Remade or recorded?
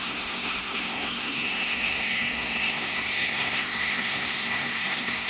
remade